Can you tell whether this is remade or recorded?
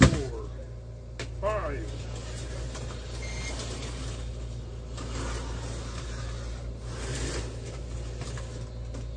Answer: recorded